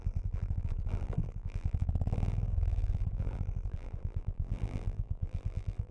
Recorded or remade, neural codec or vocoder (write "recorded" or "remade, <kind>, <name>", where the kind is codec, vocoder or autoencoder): remade, vocoder, BigVGAN v2